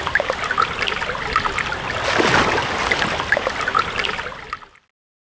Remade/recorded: recorded